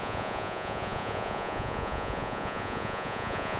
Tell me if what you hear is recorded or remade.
remade